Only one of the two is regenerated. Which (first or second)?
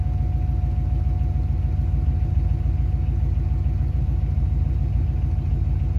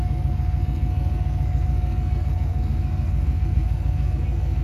second